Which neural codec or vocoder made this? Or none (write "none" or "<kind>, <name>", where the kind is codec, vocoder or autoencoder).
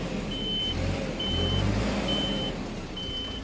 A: none